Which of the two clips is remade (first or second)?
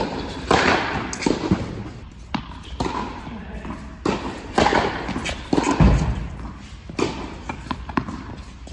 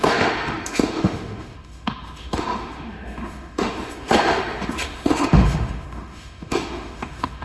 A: second